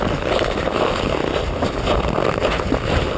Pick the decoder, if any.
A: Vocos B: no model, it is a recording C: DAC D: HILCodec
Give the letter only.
B